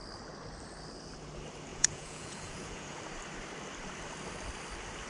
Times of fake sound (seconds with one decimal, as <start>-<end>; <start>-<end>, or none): 1.7-3.0